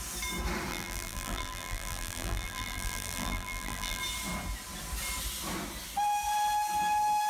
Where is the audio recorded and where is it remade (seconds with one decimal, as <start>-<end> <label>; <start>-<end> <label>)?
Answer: 0.0-0.7 recorded; 0.7-4.0 remade; 4.0-7.3 recorded